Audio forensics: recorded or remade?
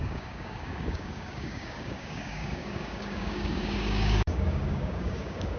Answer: remade